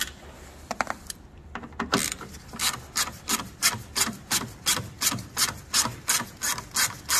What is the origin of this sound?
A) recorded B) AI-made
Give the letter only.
A